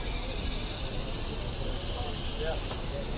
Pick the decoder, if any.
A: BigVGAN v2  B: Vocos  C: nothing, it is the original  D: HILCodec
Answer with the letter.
C